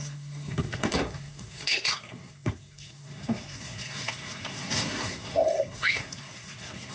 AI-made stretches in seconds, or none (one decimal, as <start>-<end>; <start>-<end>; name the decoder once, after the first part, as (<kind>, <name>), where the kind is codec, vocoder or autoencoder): 0.0-6.9 (codec, SNAC)